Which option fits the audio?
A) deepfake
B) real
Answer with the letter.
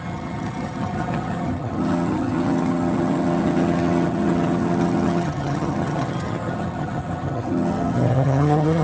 A